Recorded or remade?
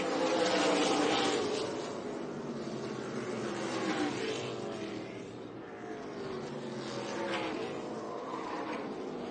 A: recorded